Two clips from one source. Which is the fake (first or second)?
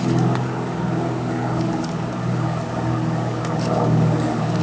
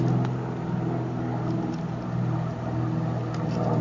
first